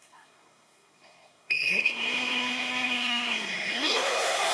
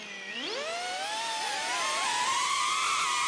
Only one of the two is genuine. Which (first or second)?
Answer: second